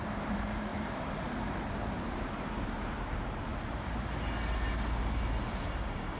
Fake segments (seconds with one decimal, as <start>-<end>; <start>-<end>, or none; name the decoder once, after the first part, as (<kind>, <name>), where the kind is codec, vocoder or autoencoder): 0.0-3.5 (vocoder, BigVGAN v2); 5.5-6.2